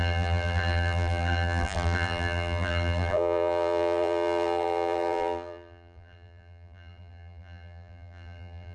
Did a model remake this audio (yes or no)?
yes